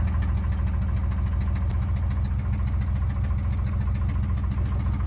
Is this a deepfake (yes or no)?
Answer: no